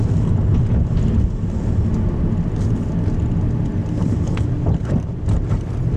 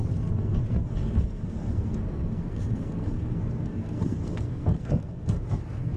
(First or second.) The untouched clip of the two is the first